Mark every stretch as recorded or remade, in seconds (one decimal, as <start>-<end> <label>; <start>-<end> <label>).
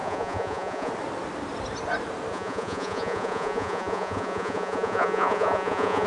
0.0-0.9 remade; 0.9-2.3 recorded; 2.3-6.1 remade